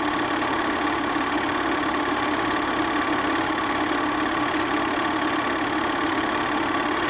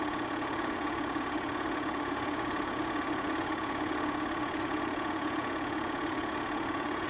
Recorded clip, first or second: first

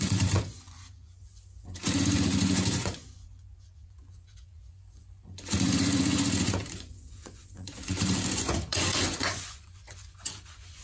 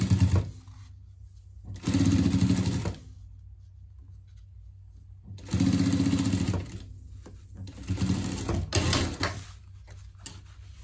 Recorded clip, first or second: second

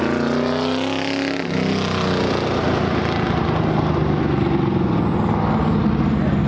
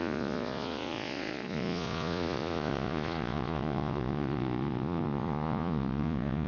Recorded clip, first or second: first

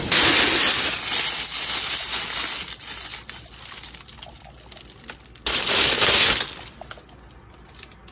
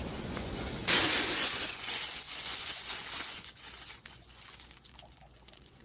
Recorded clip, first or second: first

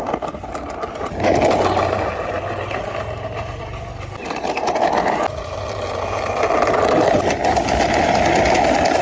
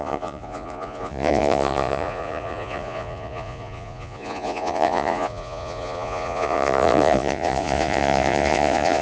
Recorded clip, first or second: first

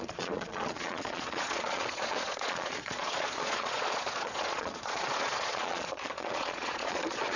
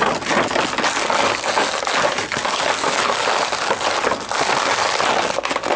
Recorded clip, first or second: second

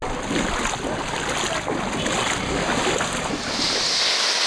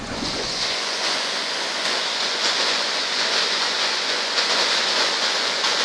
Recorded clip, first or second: first